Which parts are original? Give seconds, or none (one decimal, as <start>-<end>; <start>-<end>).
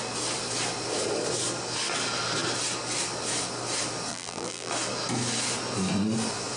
0.0-4.1; 4.7-6.6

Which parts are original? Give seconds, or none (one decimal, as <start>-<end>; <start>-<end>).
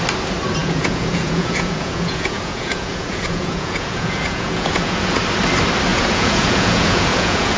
0.0-0.6; 5.2-5.9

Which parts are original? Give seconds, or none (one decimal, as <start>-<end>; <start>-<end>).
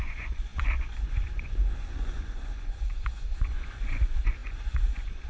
none